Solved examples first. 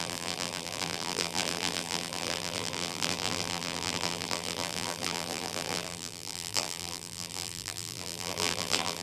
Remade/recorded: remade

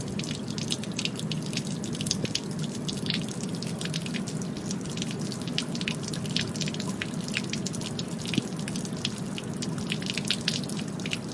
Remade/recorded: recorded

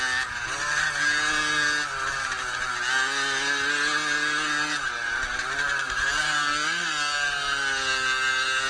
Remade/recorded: recorded